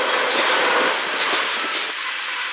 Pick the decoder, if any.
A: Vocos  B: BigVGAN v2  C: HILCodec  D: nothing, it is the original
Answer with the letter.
D